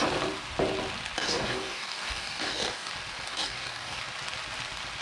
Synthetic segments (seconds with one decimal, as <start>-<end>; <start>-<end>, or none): 1.2-2.9; 3.3-4.0